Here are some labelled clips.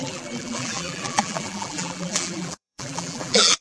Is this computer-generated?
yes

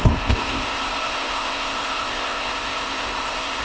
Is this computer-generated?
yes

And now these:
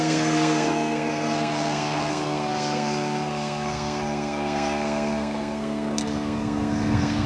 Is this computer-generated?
yes